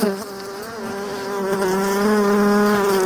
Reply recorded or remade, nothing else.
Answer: recorded